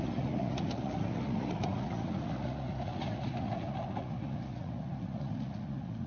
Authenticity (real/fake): fake